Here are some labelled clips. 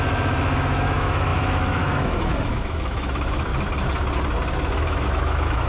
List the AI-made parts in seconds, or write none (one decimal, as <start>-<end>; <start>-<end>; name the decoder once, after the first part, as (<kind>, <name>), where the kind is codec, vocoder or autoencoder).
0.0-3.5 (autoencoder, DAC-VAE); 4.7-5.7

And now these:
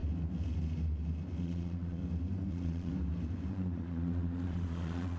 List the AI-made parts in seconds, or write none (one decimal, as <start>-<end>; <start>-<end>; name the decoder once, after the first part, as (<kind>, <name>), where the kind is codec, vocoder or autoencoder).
1.4-2.0 (vocoder, Vocos); 2.5-2.9; 3.5-5.2

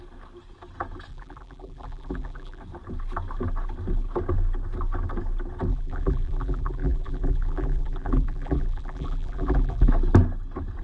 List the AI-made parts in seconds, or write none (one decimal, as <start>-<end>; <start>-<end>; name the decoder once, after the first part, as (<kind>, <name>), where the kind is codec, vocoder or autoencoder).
1.1-2.6 (vocoder, BigVGAN v2); 5.7-9.9

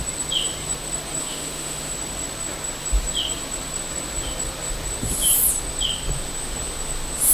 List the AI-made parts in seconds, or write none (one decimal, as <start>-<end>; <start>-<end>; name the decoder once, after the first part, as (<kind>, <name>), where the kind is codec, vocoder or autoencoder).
1.2-1.9 (autoencoder, DAC-VAE)

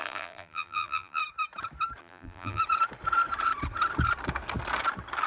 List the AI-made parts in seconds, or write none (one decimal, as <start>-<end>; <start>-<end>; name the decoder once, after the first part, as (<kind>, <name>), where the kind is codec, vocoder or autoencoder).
0.0-1.2 (vocoder, BigVGAN v2); 2.0-2.6

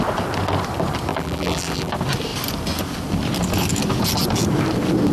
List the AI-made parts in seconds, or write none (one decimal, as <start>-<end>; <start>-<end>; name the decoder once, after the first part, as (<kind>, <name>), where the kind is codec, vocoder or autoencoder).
1.1-1.9 (vocoder, BigVGAN v2)